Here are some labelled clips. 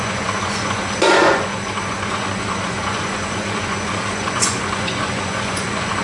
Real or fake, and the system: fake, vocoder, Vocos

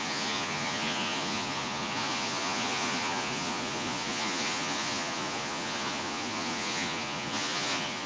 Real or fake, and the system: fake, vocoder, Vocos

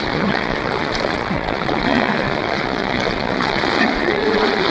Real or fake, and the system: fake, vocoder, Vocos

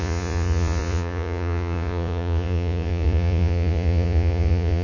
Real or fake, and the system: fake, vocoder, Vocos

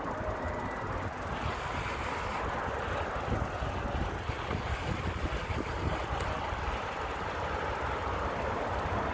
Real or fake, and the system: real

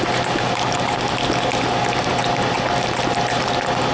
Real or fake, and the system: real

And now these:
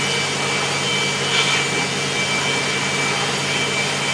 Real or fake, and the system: real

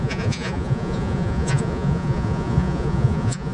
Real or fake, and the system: fake, vocoder, Vocos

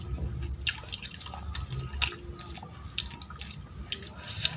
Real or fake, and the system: real